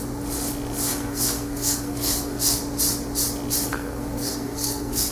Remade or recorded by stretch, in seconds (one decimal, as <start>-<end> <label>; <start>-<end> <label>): 0.0-0.9 recorded; 0.9-2.6 remade; 2.6-3.7 recorded; 3.7-5.1 remade